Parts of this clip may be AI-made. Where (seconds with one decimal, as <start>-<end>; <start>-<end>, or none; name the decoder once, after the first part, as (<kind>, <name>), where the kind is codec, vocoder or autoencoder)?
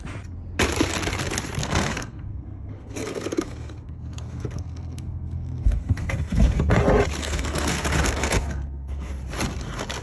1.6-6.7 (codec, SNAC); 7.2-9.1